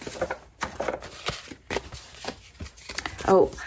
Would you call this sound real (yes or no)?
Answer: yes